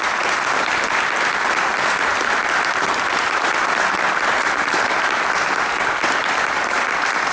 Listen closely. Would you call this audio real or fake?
fake